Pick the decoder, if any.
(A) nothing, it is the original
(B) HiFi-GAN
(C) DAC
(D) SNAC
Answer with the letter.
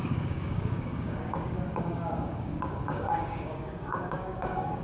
C